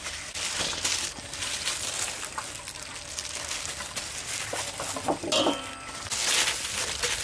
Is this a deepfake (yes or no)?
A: no